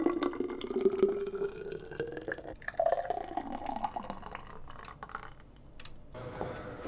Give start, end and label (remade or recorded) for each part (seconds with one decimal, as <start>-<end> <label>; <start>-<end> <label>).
0.0-6.9 recorded